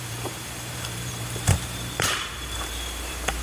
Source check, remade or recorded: remade